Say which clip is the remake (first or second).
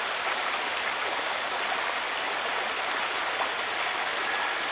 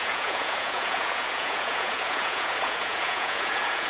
second